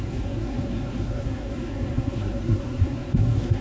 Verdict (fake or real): fake